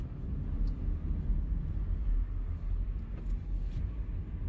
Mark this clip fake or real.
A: real